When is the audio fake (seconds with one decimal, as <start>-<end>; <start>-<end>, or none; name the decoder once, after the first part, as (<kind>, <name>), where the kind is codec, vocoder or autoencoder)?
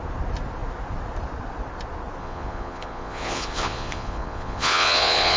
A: 2.2-5.4 (vocoder, Vocos)